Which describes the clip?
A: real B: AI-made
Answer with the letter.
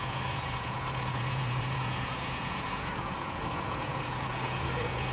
B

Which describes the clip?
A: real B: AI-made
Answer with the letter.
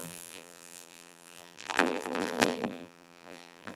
B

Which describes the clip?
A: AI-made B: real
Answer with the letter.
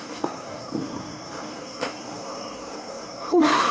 A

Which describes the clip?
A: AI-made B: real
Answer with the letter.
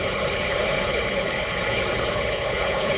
A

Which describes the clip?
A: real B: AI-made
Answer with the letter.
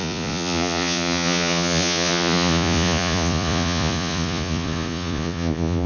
B